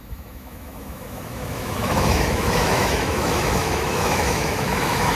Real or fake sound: fake